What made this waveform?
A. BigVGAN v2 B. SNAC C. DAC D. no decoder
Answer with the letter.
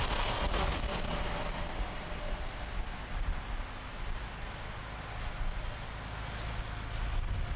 D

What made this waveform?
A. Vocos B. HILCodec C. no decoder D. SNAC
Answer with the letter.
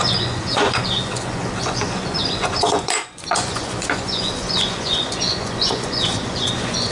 A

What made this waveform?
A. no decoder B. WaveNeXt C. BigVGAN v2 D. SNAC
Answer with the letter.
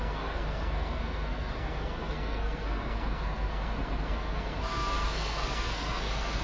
D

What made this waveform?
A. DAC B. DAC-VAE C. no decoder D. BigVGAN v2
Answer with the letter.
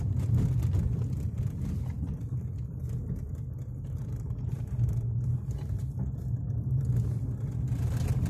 C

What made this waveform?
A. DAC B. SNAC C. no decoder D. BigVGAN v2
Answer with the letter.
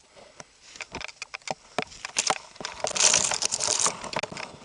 C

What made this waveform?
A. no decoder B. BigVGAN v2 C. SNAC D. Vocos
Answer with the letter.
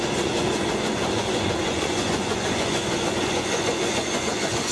D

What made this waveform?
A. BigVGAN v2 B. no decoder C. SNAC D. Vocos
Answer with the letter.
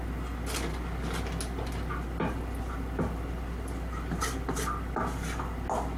B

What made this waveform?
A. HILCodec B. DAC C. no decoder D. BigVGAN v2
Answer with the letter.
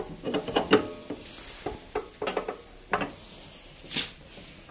C